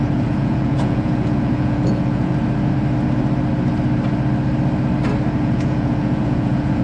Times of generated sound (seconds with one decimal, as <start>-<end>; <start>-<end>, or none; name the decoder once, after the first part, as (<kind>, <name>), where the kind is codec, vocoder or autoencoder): 0.0-2.3 (vocoder, Vocos); 5.4-6.8